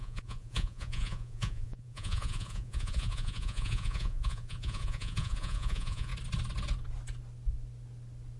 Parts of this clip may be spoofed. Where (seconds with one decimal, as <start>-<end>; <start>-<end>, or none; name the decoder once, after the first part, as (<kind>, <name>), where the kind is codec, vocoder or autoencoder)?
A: 0.0-6.1 (vocoder, Vocos)